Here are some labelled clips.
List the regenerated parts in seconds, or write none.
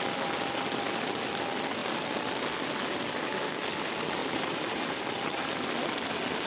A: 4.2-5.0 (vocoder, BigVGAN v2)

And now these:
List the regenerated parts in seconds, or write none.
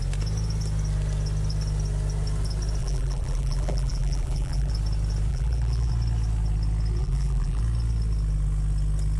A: 2.8-4.7 (vocoder, BigVGAN v2); 5.3-5.9; 7.0-7.6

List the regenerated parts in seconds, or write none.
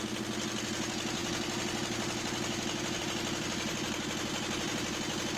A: none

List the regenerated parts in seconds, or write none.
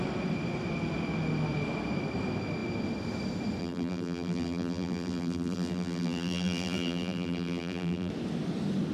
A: 3.6-8.1 (vocoder, BigVGAN v2)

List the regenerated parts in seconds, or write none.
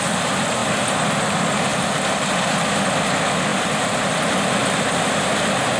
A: 1.7-2.5 (vocoder, BigVGAN v2); 3.5-4.3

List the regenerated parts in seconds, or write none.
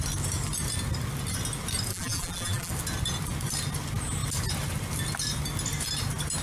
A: 1.9-2.7 (vocoder, BigVGAN v2)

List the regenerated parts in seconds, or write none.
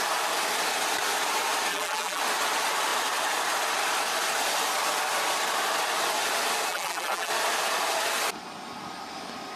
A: 1.7-2.2 (vocoder, BigVGAN v2); 6.7-7.3